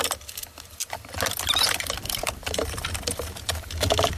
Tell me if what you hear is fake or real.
real